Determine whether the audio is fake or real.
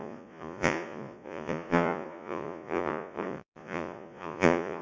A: fake